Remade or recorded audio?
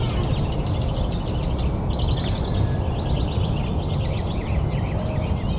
recorded